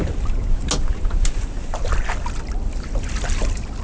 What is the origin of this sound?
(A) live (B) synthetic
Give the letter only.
A